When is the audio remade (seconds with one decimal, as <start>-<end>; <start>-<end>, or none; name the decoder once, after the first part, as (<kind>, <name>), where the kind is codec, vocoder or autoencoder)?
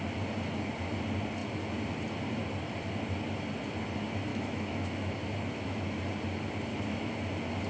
4.3-6.0 (autoencoder, DAC-VAE); 6.7-7.2